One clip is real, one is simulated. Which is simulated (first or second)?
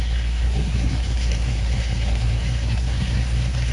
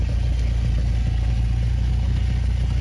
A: first